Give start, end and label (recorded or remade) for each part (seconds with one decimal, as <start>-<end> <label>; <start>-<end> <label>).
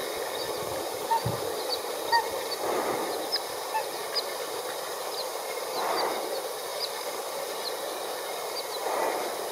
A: 0.0-6.7 recorded; 6.7-7.2 remade; 7.2-9.5 recorded